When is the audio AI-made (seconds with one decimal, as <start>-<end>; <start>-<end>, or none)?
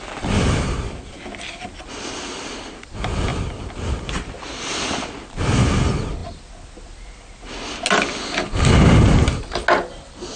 none